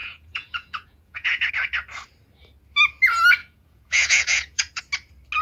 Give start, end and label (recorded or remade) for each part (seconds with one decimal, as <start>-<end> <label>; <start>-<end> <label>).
0.0-1.5 remade; 1.5-3.4 recorded; 3.4-4.8 remade; 4.8-5.4 recorded